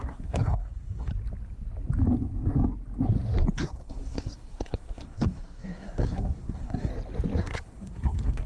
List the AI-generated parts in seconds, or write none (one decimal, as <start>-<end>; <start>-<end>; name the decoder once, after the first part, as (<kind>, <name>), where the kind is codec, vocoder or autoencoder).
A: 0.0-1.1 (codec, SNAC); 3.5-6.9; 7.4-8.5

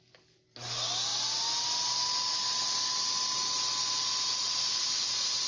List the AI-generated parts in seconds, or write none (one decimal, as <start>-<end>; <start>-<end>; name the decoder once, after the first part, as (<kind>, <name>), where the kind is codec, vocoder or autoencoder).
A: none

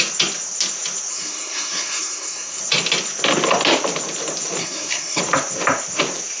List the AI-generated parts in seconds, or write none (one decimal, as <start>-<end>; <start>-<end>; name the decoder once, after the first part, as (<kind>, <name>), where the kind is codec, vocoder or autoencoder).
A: 1.1-2.6 (codec, SNAC); 4.6-5.2

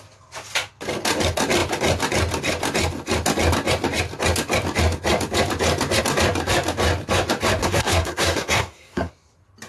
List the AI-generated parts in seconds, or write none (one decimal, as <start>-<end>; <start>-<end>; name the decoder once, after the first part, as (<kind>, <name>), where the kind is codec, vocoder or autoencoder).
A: 7.6-9.1 (codec, SNAC)